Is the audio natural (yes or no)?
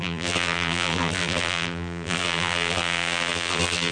no